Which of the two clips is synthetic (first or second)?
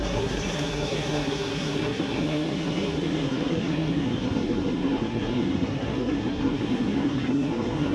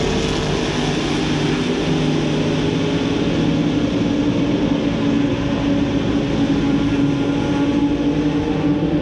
first